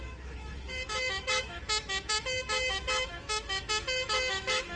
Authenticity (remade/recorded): remade